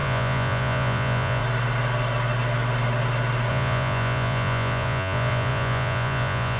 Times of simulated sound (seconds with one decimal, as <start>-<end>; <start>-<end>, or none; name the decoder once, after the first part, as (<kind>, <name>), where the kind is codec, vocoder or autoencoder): 0.0-1.4 (vocoder, Vocos); 3.5-6.6